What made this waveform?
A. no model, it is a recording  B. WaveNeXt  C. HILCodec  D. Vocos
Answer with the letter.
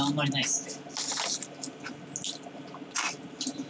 A